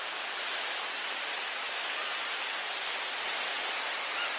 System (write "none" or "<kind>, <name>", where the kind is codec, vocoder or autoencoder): vocoder, BigVGAN v2